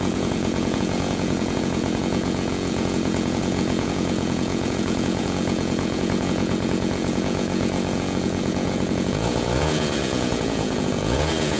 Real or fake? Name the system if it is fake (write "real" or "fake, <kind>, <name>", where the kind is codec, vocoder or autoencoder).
fake, vocoder, Vocos